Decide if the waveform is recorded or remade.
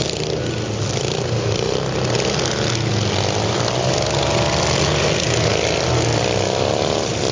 recorded